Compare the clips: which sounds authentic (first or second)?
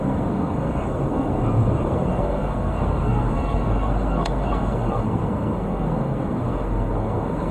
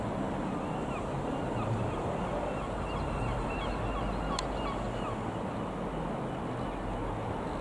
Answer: second